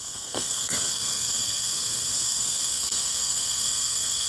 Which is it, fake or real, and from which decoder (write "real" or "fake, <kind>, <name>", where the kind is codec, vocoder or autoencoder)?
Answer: fake, codec, SNAC